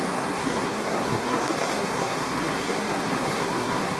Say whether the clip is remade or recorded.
remade